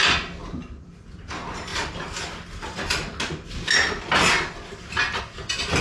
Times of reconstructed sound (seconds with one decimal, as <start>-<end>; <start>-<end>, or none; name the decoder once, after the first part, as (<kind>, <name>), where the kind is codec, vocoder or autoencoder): none